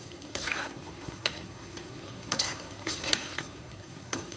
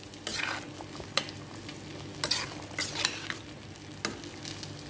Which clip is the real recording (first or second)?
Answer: second